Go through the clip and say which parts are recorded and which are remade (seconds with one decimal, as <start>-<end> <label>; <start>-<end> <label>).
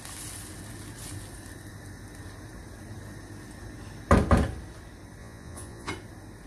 0.0-5.2 recorded; 5.2-5.9 remade; 5.9-6.5 recorded